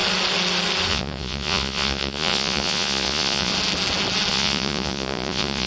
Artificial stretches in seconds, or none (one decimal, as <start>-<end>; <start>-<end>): 0.9-3.5; 4.3-5.7